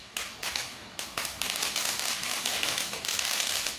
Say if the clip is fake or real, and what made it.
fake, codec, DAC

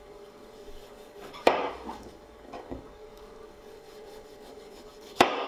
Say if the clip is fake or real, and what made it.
fake, codec, DAC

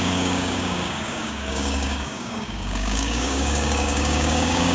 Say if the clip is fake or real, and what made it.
fake, codec, DAC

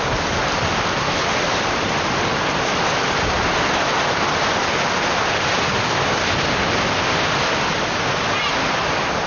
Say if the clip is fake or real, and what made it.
real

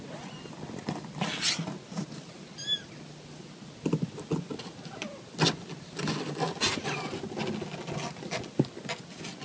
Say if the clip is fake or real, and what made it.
real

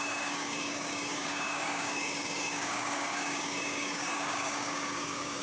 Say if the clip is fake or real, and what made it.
fake, codec, DAC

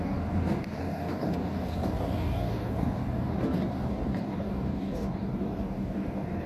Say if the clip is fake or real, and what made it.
fake, codec, DAC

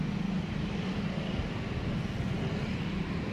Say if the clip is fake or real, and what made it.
real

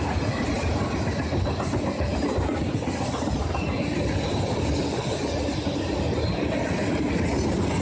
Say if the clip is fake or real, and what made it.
real